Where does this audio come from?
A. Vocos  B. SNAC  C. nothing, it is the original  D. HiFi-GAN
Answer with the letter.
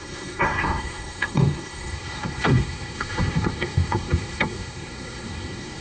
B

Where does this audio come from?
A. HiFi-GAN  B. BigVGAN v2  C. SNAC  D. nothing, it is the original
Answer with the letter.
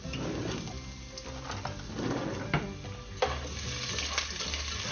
D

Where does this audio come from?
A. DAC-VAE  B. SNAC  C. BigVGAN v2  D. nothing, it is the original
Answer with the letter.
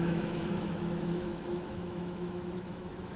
A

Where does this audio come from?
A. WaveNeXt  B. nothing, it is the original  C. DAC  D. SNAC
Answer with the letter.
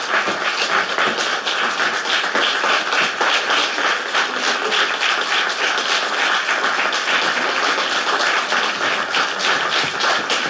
B